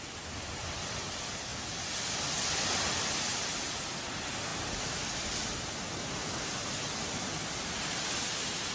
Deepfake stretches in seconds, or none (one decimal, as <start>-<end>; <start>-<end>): none